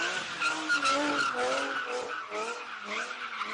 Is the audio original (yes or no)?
yes